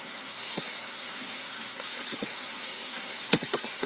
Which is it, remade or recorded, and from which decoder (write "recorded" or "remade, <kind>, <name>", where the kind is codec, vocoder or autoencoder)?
remade, codec, SNAC